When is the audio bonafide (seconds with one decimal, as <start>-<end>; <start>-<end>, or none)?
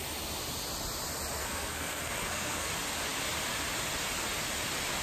0.0-1.4; 2.7-5.0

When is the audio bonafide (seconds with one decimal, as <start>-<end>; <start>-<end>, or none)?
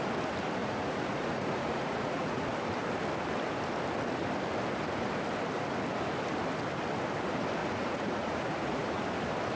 0.0-0.6; 2.5-7.6; 9.0-9.6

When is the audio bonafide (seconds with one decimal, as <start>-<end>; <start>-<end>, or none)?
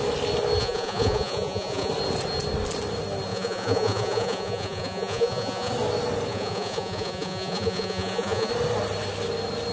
0.0-0.6; 1.9-3.3; 5.7-6.3; 8.5-9.7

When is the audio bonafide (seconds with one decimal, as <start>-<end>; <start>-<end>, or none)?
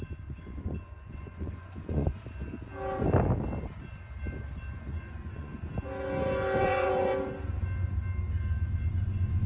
2.2-4.9; 5.5-6.6; 7.1-8.9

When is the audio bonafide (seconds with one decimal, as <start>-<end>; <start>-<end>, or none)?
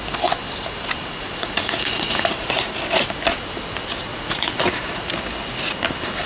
0.0-1.0; 2.7-4.1; 5.1-6.3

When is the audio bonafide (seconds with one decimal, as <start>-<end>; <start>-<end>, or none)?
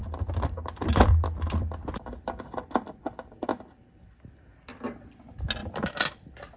4.0-5.6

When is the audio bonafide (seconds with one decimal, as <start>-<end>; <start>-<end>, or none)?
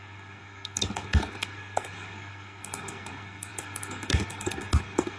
none